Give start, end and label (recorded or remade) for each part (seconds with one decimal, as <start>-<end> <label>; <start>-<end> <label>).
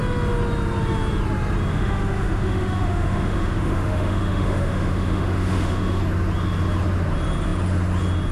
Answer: 0.0-1.7 recorded; 1.7-6.0 remade; 6.0-8.3 recorded